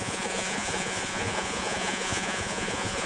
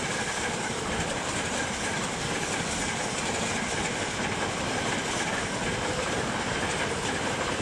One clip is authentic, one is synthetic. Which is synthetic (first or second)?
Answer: first